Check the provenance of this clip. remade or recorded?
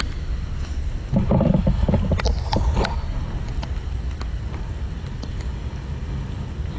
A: recorded